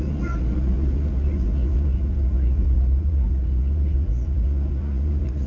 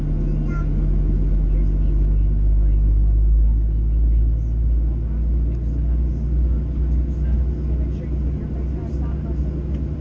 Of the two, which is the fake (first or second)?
first